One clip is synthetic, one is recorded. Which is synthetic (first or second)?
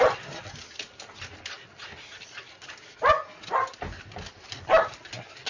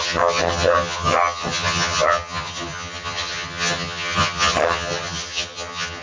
second